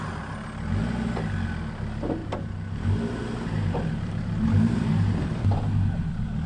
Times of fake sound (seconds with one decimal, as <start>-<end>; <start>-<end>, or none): 2.2-6.1